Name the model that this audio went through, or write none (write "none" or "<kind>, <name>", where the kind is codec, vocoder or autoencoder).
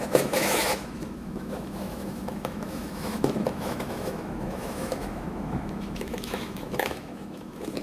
autoencoder, DAC-VAE